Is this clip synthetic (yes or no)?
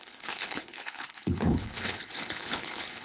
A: yes